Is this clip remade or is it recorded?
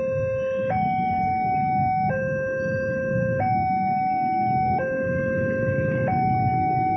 recorded